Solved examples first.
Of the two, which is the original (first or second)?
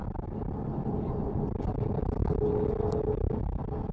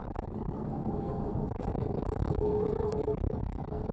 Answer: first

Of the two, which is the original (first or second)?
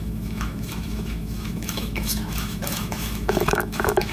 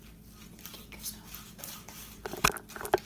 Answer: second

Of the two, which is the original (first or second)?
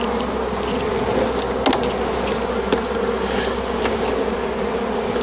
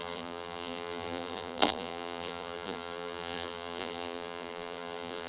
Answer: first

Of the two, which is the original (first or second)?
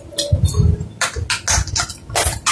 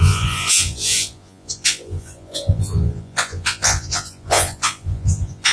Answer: first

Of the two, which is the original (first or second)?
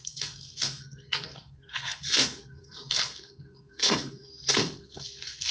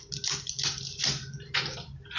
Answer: second